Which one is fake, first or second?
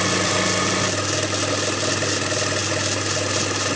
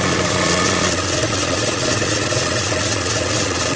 second